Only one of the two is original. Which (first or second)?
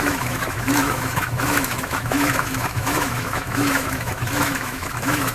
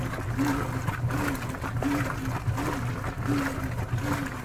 second